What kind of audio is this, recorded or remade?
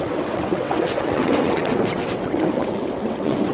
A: remade